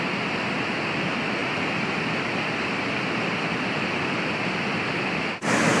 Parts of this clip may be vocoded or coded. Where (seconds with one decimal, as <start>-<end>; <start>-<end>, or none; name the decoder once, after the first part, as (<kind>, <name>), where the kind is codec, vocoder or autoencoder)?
1.4-4.9 (vocoder, BigVGAN v2)